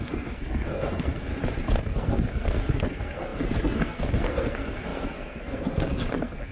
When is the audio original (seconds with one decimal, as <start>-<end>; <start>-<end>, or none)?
1.3-1.8